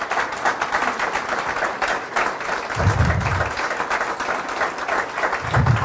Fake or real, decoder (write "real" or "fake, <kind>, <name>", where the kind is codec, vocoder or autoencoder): real